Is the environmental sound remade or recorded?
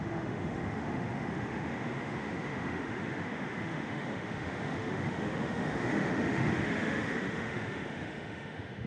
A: remade